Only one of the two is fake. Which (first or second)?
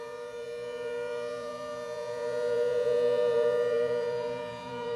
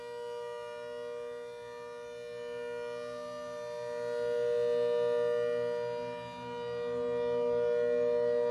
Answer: first